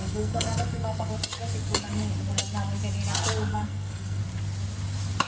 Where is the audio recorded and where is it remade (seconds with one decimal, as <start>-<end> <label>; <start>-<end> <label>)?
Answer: 0.0-1.1 remade; 1.1-3.5 recorded; 3.5-4.2 remade; 4.2-5.3 recorded

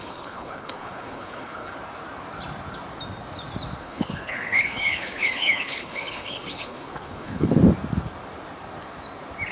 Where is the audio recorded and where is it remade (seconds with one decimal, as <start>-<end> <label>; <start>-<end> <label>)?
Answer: 0.0-1.7 remade; 1.7-3.8 recorded; 3.8-7.5 remade; 7.5-9.5 recorded

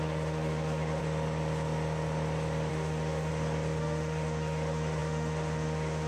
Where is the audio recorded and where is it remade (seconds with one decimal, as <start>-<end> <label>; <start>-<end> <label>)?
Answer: 0.0-1.0 remade; 1.0-2.7 recorded; 2.7-3.3 remade; 3.3-3.8 recorded; 3.8-6.1 remade

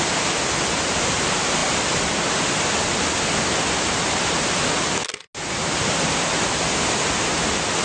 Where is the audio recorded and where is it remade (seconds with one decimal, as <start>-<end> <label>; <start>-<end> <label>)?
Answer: 0.0-7.8 recorded

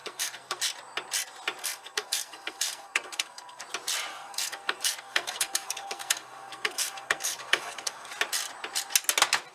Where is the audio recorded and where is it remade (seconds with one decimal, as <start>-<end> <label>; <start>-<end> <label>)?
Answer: 0.0-0.6 remade; 0.6-1.6 recorded; 1.6-3.6 remade; 3.6-4.1 recorded; 4.1-8.1 remade; 8.1-9.5 recorded

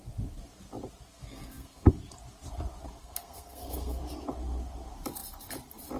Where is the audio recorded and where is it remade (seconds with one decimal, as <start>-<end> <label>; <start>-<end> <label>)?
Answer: 0.0-1.1 recorded; 1.1-1.9 remade; 1.9-3.0 recorded; 3.0-4.0 remade; 4.0-6.0 recorded

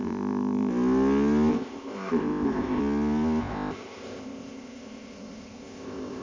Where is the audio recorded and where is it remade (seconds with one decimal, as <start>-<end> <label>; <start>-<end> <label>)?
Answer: 0.0-0.7 remade; 0.7-1.5 recorded; 1.5-2.8 remade; 2.8-3.4 recorded; 3.4-6.2 remade

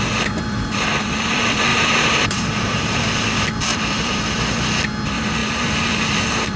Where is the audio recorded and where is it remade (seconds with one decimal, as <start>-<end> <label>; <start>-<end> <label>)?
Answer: 0.0-1.7 recorded; 1.7-3.0 remade; 3.0-3.7 recorded; 3.7-4.4 remade; 4.4-6.6 recorded